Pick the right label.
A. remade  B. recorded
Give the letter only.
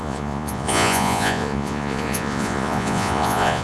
A